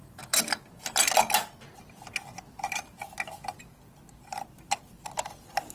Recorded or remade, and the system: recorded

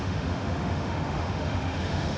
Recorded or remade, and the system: remade, autoencoder, DAC-VAE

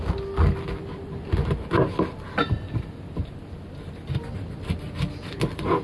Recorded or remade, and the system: recorded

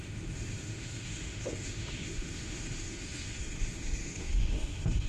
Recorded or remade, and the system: remade, autoencoder, DAC-VAE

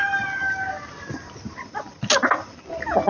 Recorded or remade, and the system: recorded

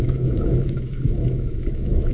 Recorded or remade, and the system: remade, autoencoder, DAC-VAE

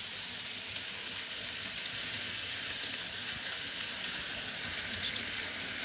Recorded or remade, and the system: recorded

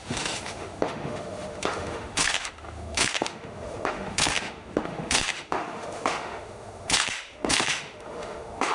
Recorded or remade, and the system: remade, autoencoder, DAC-VAE